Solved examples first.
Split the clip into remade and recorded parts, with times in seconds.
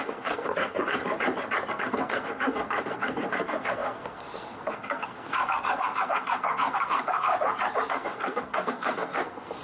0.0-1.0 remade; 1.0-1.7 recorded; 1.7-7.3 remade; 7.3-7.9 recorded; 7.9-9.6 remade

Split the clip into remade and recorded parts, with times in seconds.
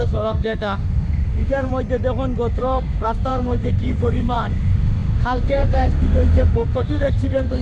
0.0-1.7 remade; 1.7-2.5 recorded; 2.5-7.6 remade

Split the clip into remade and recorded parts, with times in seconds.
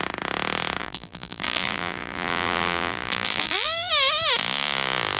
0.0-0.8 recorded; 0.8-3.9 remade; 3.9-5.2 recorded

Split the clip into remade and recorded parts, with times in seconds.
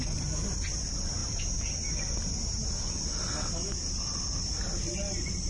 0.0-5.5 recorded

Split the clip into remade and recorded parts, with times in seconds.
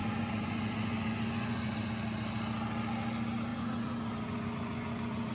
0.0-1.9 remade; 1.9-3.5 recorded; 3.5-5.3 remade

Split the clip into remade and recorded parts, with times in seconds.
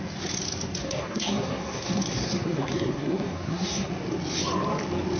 0.0-0.8 recorded; 0.8-3.9 remade; 3.9-5.2 recorded